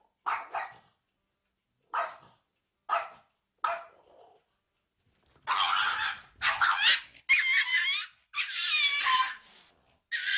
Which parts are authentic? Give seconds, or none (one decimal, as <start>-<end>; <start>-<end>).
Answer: 0.0-7.7; 9.7-10.4